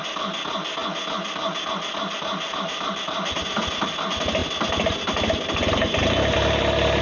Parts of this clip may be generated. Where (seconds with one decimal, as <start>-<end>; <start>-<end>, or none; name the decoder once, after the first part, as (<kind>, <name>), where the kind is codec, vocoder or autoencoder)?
none